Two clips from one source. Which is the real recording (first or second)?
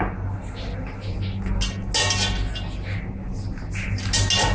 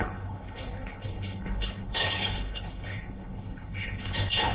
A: first